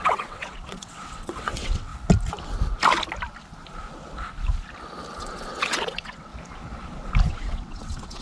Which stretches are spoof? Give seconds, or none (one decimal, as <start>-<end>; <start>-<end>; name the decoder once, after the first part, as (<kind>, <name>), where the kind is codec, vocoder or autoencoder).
0.0-1.9 (vocoder, WaveNeXt); 5.2-6.3; 7.3-8.2